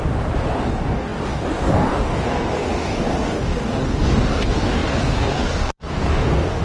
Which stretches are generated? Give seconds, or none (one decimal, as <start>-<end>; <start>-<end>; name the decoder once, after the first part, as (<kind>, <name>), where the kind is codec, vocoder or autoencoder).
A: 0.6-6.6 (codec, DAC)